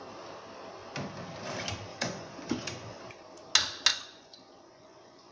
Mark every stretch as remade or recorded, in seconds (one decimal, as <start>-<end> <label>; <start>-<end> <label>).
0.0-1.9 recorded; 1.9-3.0 remade; 3.0-3.9 recorded; 3.9-5.3 remade